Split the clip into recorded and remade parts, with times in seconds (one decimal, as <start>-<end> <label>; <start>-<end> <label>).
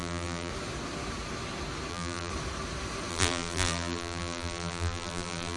0.0-0.5 remade; 0.5-1.9 recorded; 1.9-2.3 remade; 2.3-3.1 recorded; 3.1-5.6 remade